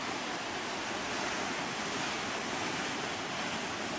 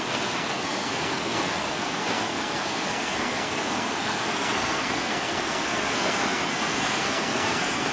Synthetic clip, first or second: second